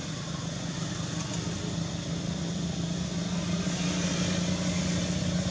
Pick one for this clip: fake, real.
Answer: real